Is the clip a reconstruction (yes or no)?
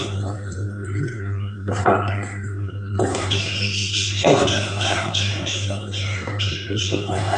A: yes